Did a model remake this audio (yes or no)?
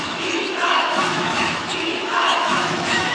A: yes